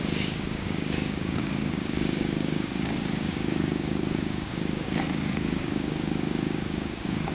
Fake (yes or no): yes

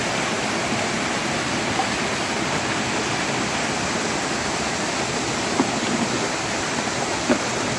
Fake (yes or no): no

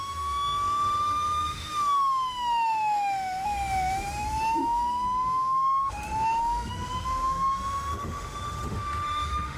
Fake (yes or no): yes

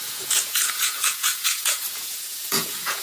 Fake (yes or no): yes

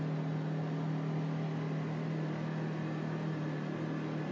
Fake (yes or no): no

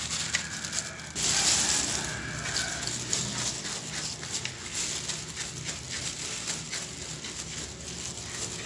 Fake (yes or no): no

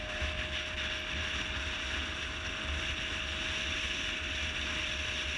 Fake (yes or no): no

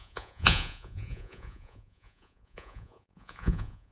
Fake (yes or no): yes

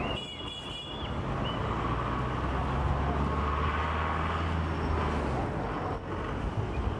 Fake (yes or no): no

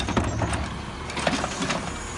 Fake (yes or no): no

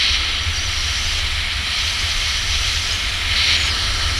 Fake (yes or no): no